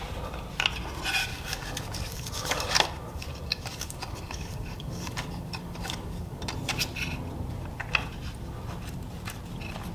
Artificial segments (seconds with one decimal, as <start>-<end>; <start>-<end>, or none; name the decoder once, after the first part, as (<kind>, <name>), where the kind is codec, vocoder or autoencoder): 1.2-6.4 (codec, DAC)